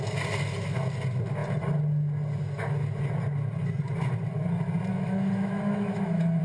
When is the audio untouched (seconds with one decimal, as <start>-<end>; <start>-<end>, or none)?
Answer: 0.0-4.9